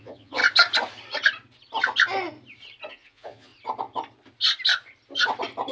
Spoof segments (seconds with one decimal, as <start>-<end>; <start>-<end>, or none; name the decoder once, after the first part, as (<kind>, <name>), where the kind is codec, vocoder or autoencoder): 0.0-0.4 (vocoder, Vocos); 2.9-3.5